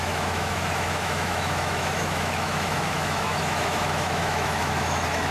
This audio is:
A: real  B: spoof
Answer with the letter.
B